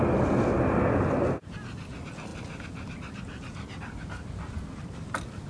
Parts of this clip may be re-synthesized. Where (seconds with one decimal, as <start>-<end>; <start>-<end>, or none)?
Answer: none